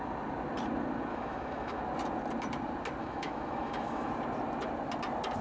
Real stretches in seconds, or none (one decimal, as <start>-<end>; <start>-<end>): 0.0-1.1; 1.8-3.0; 4.1-5.4